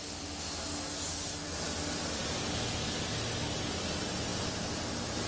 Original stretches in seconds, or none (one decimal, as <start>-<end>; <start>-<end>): 0.0-5.3